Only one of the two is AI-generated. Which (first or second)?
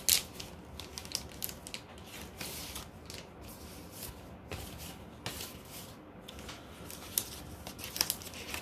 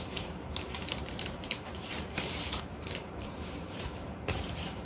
second